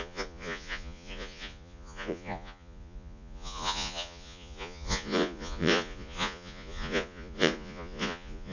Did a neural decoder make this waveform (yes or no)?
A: yes